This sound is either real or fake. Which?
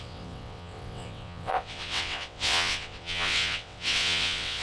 fake